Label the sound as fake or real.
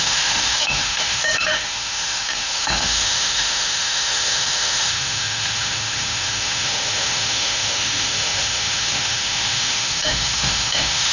fake